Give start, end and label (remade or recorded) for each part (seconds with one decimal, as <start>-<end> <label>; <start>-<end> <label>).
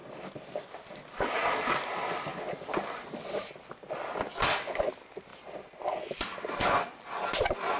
0.0-7.8 recorded